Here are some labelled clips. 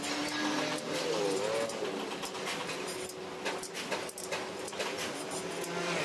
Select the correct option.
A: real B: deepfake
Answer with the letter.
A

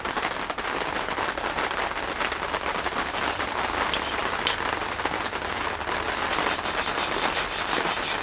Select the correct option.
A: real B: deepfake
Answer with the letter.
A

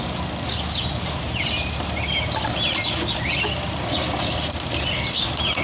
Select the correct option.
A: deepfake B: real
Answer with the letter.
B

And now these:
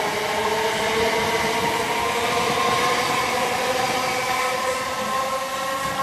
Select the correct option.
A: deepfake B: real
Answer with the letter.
B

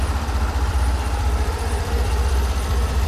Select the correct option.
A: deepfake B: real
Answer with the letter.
A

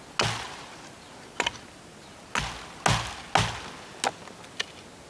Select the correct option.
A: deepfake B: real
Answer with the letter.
B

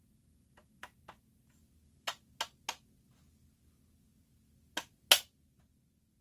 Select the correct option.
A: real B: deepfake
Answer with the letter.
A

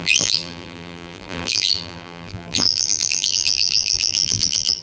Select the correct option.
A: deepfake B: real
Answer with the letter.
A